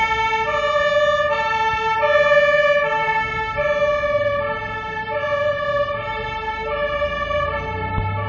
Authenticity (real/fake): real